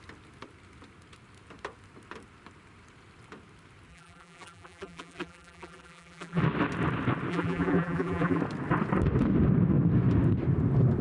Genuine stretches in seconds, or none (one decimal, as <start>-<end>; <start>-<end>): 0.0-3.9; 6.4-7.3; 8.4-11.0